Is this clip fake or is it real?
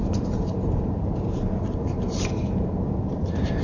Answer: fake